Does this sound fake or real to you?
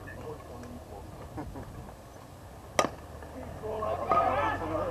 real